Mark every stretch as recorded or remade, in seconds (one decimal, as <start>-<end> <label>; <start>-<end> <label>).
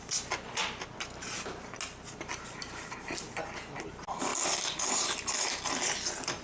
0.0-6.4 recorded